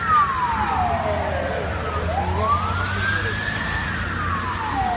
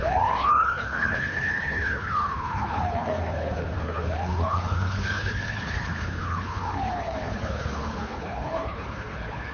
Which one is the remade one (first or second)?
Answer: second